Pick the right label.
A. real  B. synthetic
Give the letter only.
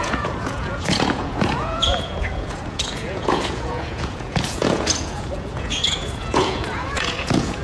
B